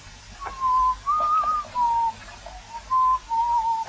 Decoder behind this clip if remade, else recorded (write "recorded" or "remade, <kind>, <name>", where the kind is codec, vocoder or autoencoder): recorded